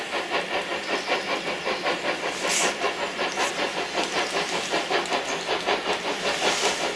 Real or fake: real